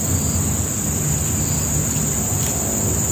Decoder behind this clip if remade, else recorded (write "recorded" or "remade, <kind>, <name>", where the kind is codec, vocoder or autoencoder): recorded